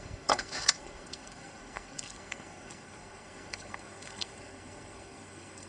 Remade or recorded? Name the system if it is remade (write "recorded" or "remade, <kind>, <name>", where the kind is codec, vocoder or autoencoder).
remade, codec, SNAC